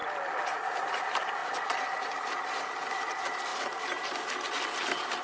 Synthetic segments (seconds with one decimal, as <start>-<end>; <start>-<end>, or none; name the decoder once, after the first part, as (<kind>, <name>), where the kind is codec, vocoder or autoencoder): none